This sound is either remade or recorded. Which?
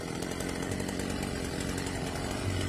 remade